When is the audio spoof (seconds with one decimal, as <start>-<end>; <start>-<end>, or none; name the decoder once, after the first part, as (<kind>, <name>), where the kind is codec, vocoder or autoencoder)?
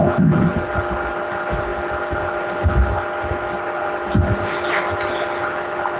none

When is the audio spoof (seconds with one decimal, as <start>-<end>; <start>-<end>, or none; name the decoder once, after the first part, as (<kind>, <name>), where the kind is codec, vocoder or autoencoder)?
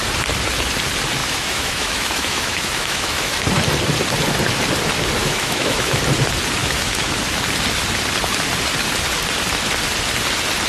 1.2-3.4 (autoencoder, DAC-VAE); 5.2-6.0; 6.6-7.2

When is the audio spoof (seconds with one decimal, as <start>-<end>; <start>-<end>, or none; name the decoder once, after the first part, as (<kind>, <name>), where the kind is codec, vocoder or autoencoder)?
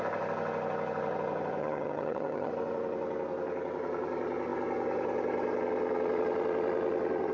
1.6-2.5 (vocoder, HiFi-GAN)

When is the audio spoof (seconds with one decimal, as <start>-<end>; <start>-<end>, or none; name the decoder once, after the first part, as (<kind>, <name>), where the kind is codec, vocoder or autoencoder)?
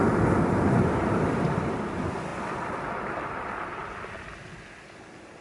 none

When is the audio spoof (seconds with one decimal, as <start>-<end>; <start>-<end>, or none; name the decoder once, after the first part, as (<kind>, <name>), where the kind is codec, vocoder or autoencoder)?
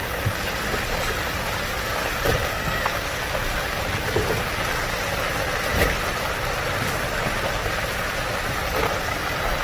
2.5-3.2 (codec, SNAC)